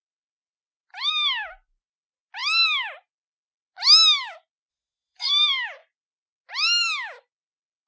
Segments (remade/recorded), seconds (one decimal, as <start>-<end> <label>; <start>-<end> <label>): 0.0-4.7 recorded; 4.7-5.3 remade; 5.3-7.9 recorded